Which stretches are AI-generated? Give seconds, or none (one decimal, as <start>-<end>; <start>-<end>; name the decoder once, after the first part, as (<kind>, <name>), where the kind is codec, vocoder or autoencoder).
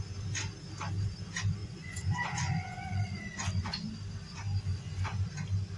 1.6-3.9 (vocoder, Vocos); 4.7-5.3